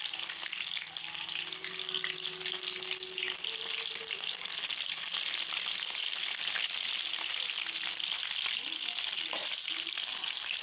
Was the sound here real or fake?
real